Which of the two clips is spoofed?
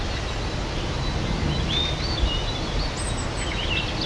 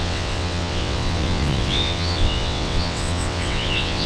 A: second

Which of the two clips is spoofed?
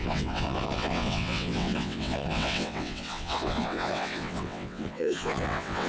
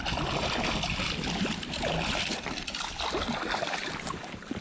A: first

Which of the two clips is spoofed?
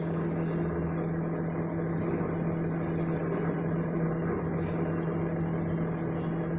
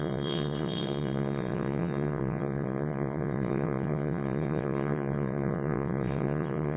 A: second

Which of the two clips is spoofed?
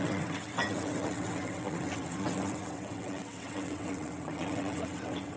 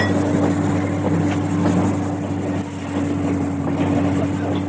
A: first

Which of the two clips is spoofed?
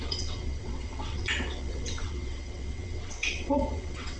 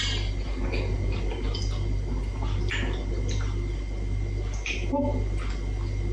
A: first